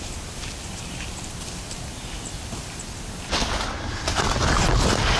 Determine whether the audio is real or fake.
real